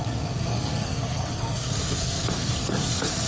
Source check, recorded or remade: remade